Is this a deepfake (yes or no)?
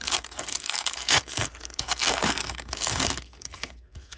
yes